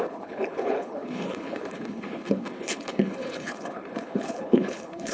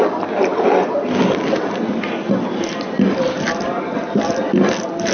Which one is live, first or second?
second